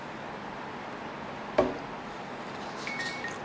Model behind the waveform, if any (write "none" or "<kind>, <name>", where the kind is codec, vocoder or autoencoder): none